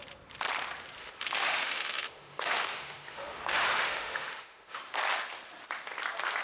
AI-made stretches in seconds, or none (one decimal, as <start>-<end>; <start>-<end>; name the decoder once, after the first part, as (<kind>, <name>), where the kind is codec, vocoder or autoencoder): 1.0-4.8 (autoencoder, DAC-VAE)